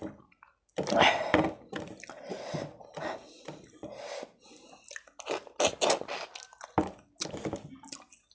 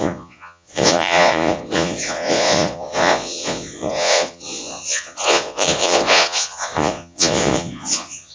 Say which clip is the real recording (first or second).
first